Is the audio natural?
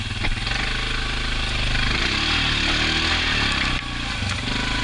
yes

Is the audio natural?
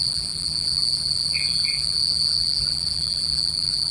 no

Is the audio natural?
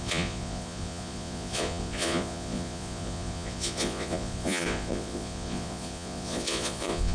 no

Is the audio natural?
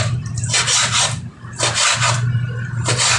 yes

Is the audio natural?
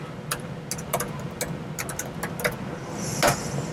yes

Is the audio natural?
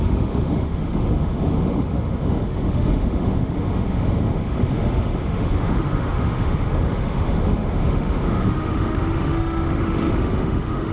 no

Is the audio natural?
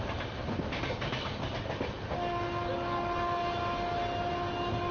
yes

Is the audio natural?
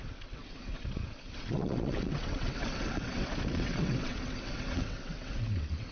no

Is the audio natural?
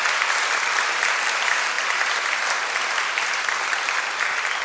yes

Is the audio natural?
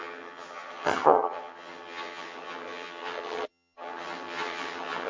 no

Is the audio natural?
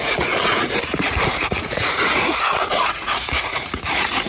no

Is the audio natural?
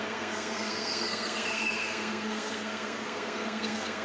no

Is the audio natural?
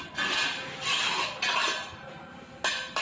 yes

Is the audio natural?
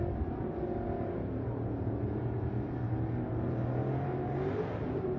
no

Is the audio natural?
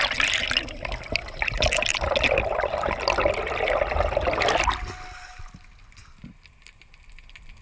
yes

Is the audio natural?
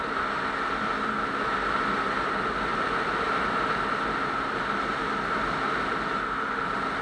yes